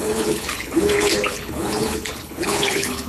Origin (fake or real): fake